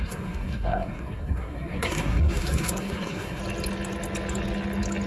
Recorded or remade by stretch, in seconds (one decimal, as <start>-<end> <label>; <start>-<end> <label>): 0.0-3.4 remade; 3.4-5.1 recorded